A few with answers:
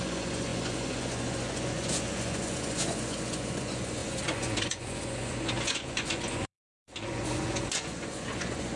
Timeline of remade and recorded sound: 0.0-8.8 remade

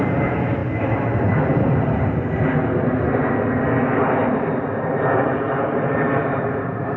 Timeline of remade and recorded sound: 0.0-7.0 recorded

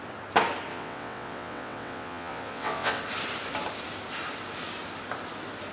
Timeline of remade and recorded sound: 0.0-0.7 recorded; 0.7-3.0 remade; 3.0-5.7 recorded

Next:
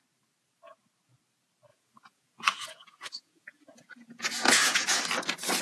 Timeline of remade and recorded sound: 0.0-1.7 recorded; 1.7-5.0 remade; 5.0-5.6 recorded